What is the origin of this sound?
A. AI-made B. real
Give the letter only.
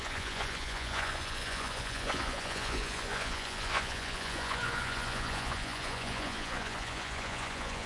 A